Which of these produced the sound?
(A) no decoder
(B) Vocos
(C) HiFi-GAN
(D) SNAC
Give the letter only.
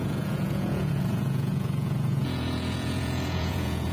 B